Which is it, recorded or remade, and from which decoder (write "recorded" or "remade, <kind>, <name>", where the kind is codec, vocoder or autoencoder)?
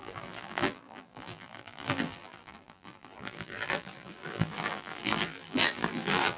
remade, vocoder, BigVGAN v2